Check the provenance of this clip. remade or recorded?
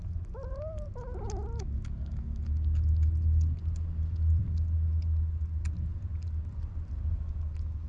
recorded